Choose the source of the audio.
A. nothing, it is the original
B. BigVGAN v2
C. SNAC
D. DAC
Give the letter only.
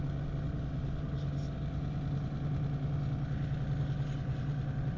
A